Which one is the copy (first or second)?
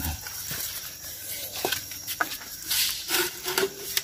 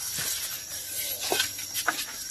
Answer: first